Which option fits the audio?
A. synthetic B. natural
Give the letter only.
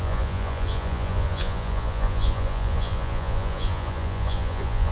A